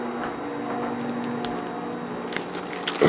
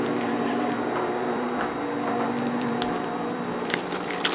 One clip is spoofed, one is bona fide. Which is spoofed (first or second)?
second